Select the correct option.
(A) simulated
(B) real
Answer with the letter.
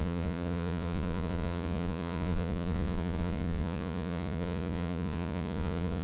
A